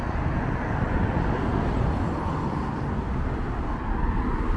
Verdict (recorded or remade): recorded